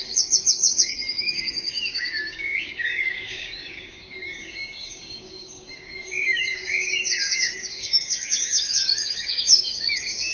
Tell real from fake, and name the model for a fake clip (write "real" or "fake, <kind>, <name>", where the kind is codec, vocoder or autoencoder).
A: fake, codec, DAC